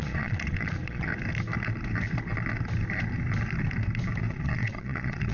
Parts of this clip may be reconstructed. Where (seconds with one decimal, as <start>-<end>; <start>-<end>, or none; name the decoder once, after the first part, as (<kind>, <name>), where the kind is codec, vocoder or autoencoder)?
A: 0.0-1.1 (vocoder, Vocos); 4.3-5.3